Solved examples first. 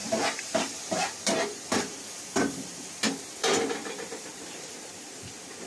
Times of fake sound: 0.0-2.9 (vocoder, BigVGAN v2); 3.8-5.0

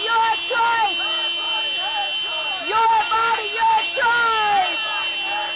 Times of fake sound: none

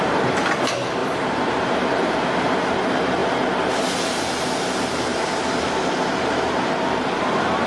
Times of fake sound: 1.0-2.5 (vocoder, BigVGAN v2); 5.1-5.6

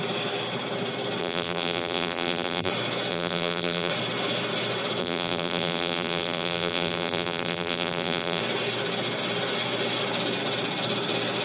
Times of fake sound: 1.2-2.7 (vocoder, BigVGAN v2); 3.1-3.9; 5.0-8.4

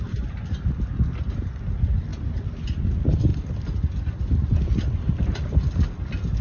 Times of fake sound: 0.0-6.4 (vocoder, BigVGAN v2)